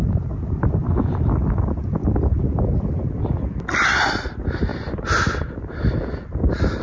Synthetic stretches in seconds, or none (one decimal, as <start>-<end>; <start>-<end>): none